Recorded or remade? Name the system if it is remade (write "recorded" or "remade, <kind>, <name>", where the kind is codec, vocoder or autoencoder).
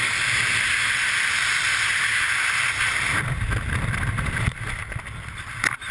recorded